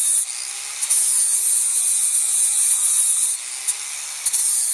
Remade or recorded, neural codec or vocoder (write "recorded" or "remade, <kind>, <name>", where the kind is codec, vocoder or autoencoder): recorded